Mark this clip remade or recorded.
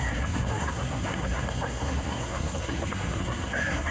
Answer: remade